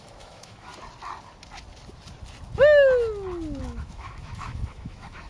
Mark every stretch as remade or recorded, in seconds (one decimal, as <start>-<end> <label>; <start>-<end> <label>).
0.0-0.7 remade; 0.7-3.6 recorded; 3.6-5.3 remade